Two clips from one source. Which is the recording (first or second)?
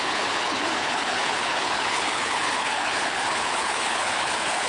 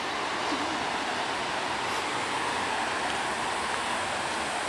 second